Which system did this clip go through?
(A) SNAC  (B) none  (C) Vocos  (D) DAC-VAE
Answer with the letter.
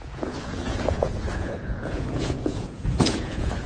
C